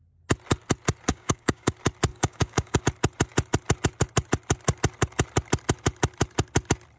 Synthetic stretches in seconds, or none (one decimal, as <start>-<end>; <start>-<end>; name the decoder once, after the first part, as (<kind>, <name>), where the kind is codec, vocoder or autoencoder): 1.1-1.7 (codec, DAC); 2.1-2.8